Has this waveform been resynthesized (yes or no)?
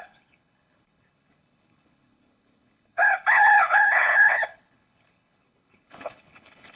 yes